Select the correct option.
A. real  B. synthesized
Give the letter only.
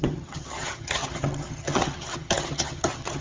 B